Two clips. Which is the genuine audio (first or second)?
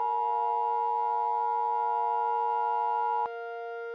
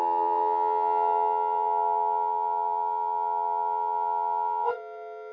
first